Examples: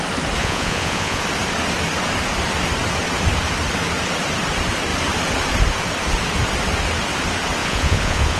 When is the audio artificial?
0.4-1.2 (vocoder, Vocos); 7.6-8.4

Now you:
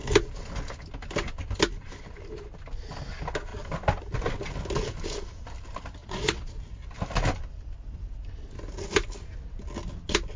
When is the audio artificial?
6.0-6.6 (vocoder, Vocos)

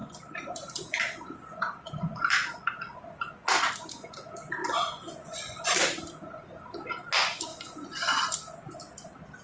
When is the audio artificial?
4.6-5.7 (vocoder, Vocos); 7.5-8.2

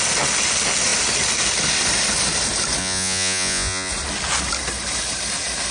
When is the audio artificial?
2.8-3.9 (vocoder, Vocos)

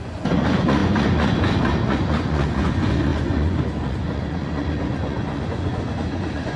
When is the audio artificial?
0.0-6.6 (vocoder, Vocos)